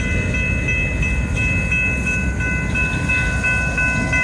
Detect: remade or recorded recorded